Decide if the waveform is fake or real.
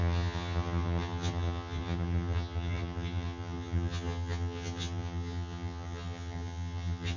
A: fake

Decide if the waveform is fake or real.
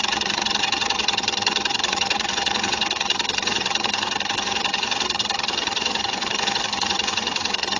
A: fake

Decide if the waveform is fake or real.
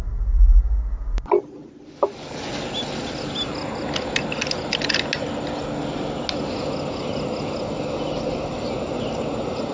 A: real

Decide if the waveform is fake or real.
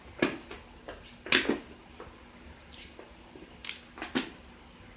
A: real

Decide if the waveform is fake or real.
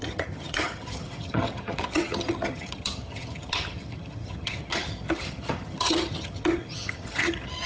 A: fake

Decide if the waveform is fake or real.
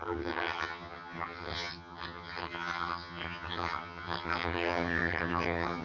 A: fake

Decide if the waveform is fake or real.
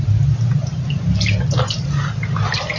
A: real